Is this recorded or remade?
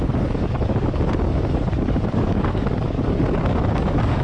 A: remade